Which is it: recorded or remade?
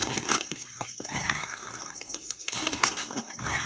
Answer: remade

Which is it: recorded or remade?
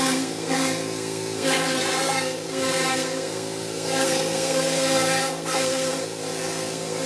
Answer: remade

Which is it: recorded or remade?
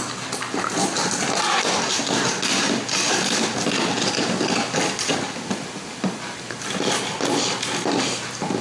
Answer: recorded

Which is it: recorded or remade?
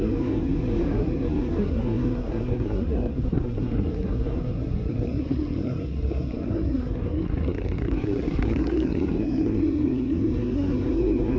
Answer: remade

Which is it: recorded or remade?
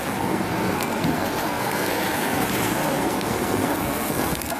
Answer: remade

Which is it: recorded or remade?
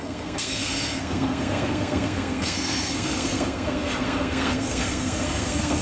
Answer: remade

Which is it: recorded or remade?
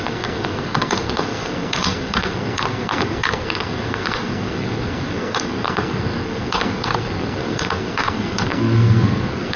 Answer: remade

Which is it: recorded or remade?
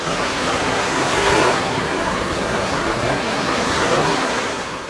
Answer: remade